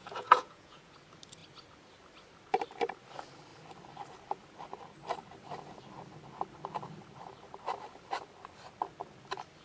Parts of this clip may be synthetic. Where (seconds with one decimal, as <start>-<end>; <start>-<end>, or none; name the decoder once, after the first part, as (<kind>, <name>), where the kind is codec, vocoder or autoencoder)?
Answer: 0.0-0.9 (vocoder, Vocos)

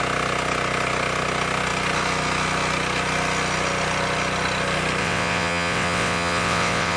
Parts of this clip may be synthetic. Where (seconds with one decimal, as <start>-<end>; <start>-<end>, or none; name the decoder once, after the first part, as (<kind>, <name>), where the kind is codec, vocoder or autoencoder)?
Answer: 5.0-7.0 (vocoder, WaveNeXt)